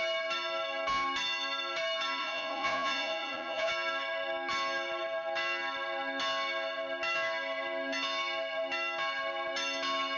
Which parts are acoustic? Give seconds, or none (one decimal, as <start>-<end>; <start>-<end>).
0.0-2.2; 3.7-10.2